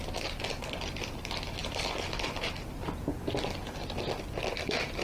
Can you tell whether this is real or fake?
real